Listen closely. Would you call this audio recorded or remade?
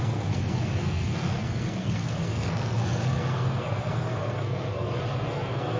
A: remade